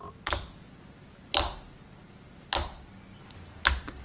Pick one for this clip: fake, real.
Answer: real